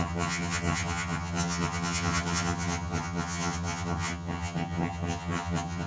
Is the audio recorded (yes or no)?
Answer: no